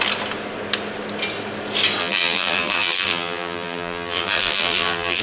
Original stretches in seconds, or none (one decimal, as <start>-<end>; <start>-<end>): 0.0-2.0